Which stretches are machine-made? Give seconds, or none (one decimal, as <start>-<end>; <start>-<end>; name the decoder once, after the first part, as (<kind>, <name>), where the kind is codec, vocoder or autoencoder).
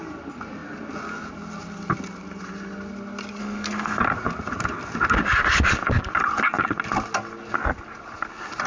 3.4-4.0 (codec, SNAC)